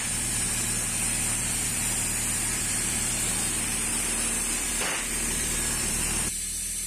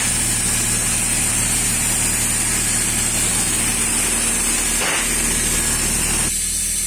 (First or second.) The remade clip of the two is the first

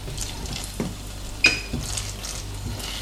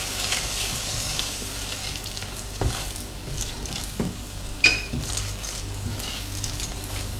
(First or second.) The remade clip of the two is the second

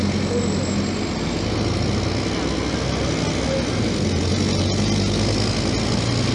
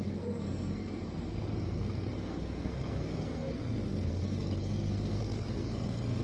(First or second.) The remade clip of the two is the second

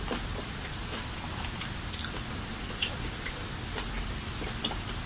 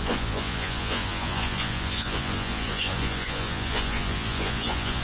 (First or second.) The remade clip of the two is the second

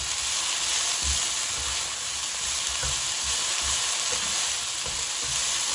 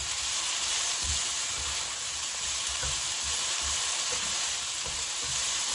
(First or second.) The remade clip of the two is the second